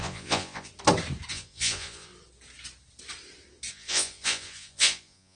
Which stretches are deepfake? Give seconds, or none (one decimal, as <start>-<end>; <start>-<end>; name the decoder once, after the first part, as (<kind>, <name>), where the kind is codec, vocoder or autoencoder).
0.0-0.7 (vocoder, Vocos); 1.3-2.1; 3.7-5.3